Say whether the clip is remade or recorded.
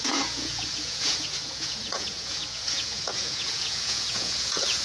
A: remade